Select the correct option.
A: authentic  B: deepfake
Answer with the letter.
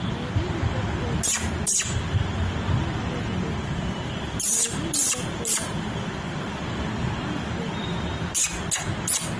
A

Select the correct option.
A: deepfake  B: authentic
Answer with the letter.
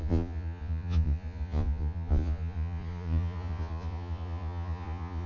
A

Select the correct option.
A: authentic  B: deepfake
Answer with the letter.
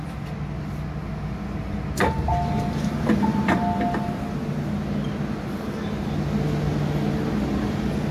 A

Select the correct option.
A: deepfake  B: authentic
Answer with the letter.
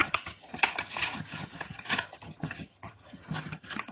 A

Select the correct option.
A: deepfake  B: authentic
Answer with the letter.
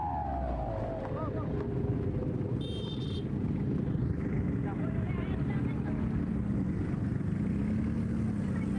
B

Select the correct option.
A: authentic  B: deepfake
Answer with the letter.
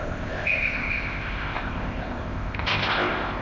B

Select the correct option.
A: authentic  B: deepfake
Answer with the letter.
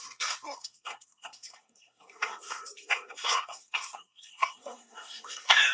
B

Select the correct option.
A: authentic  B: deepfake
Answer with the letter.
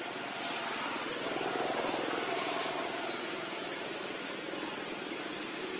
A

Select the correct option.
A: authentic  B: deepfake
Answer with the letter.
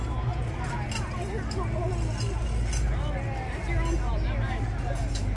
A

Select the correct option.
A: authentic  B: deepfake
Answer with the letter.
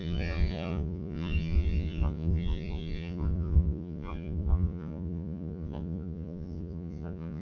B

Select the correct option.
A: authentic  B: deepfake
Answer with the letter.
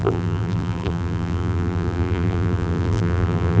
B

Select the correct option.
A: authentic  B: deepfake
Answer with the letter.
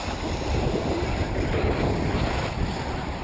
A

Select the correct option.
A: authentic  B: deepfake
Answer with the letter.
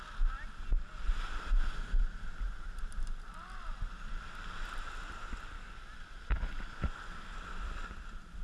A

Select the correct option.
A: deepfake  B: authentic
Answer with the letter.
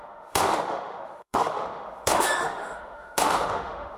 A